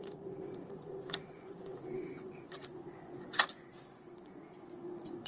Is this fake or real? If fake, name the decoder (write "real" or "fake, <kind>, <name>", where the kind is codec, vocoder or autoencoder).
fake, vocoder, Vocos